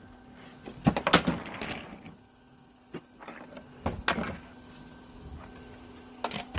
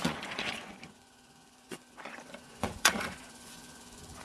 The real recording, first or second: first